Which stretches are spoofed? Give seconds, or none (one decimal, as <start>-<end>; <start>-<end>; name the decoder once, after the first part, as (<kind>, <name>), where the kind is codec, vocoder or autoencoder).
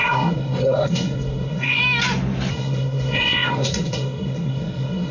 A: 0.0-1.8 (codec, SNAC); 2.5-5.1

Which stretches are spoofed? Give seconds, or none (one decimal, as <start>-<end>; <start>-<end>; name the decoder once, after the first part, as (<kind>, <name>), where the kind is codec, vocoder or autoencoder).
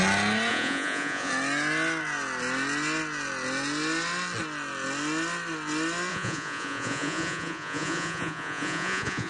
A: 0.5-1.3 (vocoder, Vocos); 6.1-9.3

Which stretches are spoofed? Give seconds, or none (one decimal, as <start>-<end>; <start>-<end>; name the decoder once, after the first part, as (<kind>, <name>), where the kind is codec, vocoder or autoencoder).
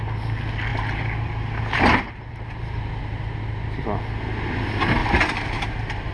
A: 0.7-3.0 (vocoder, BigVGAN v2); 5.0-6.1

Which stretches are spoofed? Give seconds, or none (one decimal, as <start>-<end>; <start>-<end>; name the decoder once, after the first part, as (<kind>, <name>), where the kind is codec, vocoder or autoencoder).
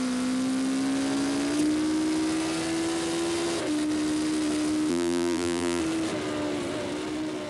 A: 4.9-5.8 (vocoder, BigVGAN v2)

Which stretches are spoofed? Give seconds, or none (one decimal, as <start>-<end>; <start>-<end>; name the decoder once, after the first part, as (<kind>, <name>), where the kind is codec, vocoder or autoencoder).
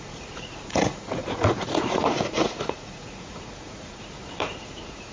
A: 0.0-5.1 (vocoder, Vocos)